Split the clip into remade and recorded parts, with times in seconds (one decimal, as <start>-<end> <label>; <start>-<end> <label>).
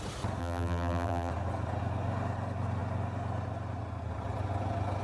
0.0-0.4 recorded; 0.4-1.3 remade; 1.3-5.0 recorded